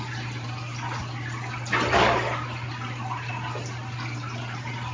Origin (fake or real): real